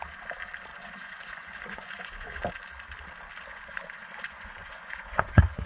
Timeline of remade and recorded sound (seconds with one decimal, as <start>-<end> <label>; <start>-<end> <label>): 0.0-0.7 recorded; 0.7-2.4 remade; 2.4-3.5 recorded; 3.5-5.7 remade